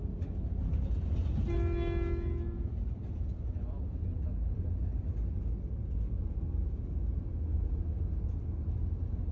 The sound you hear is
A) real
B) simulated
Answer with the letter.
A